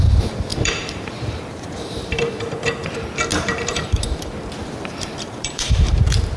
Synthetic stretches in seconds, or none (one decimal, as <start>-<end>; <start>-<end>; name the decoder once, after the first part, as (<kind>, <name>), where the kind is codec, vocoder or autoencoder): 0.5-2.5 (vocoder, BigVGAN v2); 3.3-4.0; 4.6-5.9